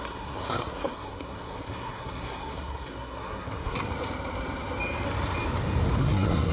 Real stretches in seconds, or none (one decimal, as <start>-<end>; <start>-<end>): 3.9-6.0